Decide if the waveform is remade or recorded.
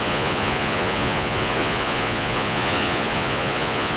remade